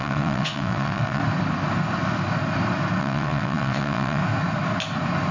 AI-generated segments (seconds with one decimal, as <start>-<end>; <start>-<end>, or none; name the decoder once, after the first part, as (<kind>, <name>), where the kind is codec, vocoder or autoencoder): 0.0-1.2 (vocoder, WaveNeXt); 3.0-4.2